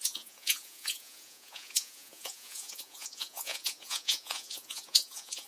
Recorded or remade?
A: remade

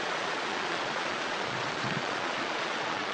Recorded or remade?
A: remade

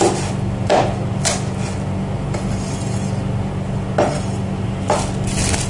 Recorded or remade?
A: recorded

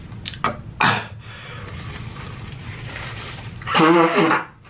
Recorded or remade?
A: recorded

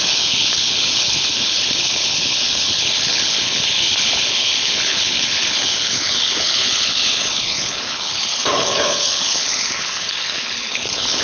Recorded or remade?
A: remade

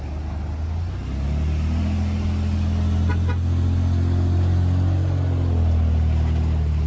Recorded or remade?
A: recorded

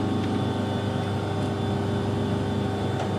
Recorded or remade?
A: recorded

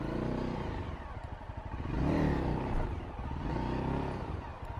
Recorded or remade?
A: remade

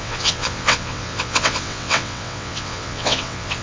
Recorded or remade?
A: remade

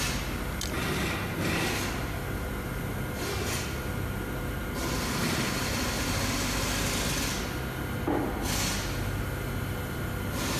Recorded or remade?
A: recorded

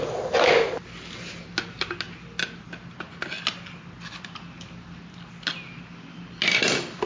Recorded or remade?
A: recorded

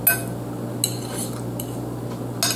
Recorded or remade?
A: recorded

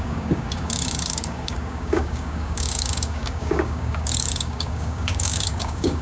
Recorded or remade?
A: remade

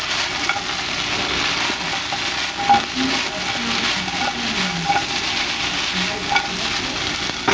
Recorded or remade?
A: recorded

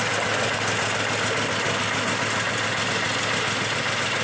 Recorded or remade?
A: recorded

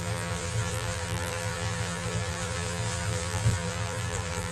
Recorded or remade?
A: remade